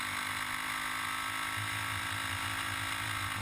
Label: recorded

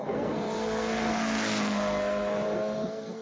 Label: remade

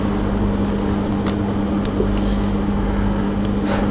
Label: recorded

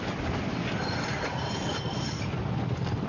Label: recorded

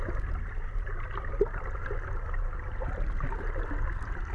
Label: recorded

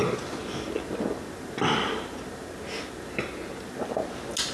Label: recorded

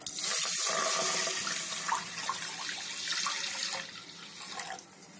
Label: recorded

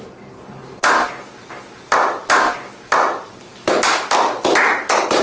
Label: recorded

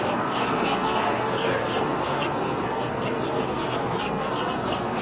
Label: remade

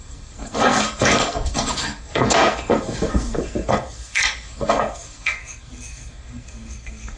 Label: remade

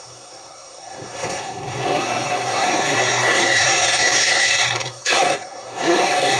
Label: remade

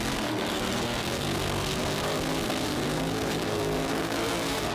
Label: remade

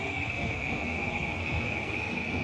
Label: remade